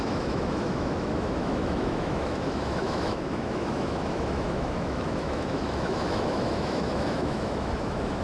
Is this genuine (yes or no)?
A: no